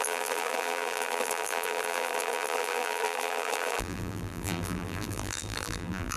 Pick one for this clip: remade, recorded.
remade